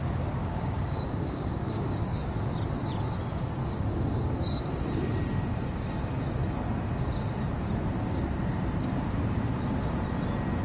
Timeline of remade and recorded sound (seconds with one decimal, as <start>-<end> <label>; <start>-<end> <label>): 0.0-0.4 recorded; 0.4-2.3 remade; 2.3-3.6 recorded; 3.6-4.6 remade; 4.6-10.6 recorded